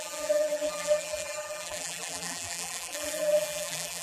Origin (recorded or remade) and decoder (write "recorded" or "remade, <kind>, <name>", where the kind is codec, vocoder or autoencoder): remade, vocoder, BigVGAN v2